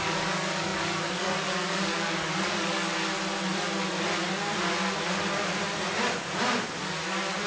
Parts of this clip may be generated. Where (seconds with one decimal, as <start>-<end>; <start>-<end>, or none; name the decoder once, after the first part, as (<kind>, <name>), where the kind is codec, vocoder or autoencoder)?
0.0-2.9 (codec, DAC)